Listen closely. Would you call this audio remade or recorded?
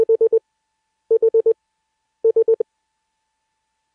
recorded